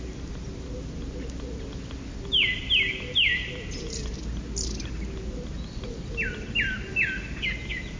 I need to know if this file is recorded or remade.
recorded